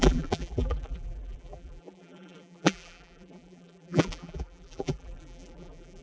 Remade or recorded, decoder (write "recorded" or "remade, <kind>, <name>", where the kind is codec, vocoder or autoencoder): remade, vocoder, BigVGAN v2